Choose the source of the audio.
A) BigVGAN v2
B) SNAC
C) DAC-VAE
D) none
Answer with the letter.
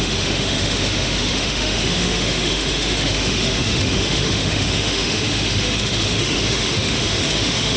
C